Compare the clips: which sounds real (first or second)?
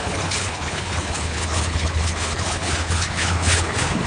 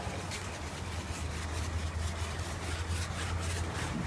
second